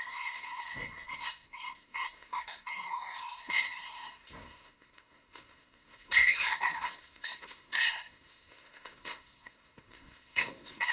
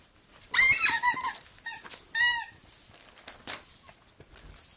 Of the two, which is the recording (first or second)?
second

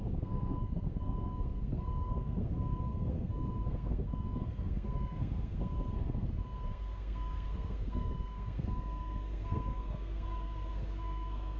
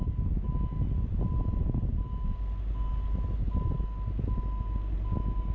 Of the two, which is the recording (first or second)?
second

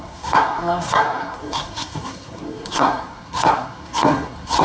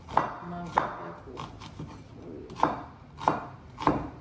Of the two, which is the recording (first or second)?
second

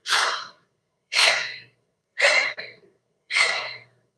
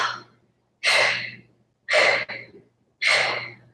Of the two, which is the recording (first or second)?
second